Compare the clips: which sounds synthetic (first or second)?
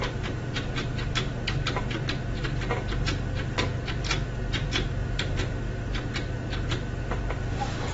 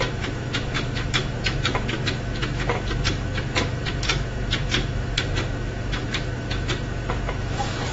second